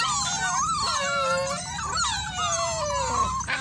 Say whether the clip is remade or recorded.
recorded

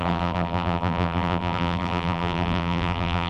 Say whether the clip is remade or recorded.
remade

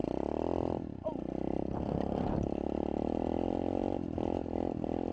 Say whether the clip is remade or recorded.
recorded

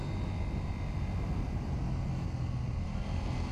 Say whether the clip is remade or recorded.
recorded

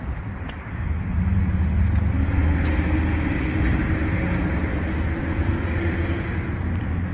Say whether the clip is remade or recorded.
recorded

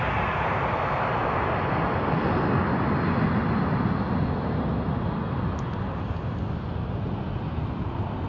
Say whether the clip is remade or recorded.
recorded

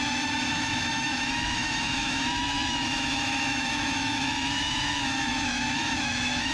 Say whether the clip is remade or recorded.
remade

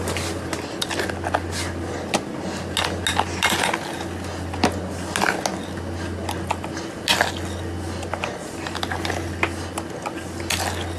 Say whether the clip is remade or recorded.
recorded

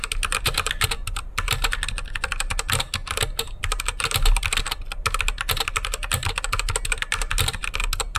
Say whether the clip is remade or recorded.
recorded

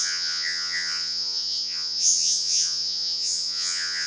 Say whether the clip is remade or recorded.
remade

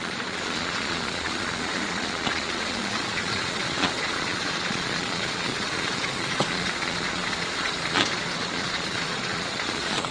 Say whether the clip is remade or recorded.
remade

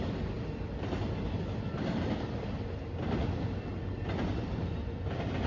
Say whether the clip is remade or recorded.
recorded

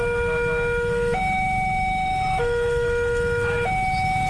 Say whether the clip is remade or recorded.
remade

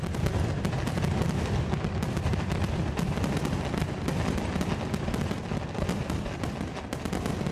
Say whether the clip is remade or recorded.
recorded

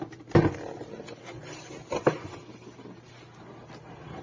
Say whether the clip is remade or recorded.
recorded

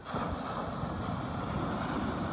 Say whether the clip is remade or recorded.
recorded